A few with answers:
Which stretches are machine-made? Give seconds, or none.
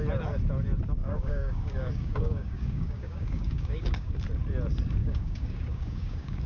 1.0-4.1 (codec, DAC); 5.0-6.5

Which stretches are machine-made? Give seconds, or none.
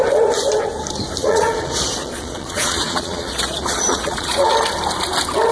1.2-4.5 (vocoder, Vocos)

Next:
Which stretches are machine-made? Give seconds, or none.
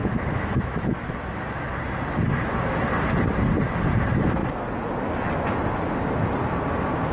0.0-1.7 (autoencoder, DAC-VAE)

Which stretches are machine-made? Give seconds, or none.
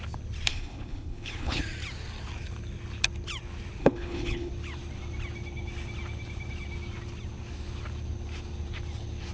0.5-1.6 (codec, HILCodec); 3.8-4.5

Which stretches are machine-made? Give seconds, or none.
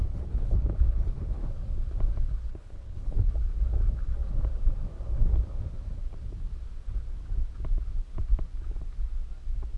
0.0-1.4 (codec, HILCodec); 2.5-3.3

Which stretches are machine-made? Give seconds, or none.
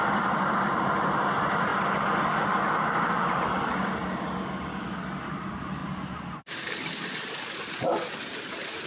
none